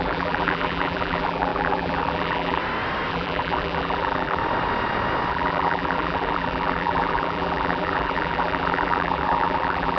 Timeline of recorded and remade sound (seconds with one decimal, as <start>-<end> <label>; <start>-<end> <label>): 0.0-2.6 remade; 2.6-3.1 recorded; 3.1-4.4 remade; 4.4-5.3 recorded; 5.3-10.0 remade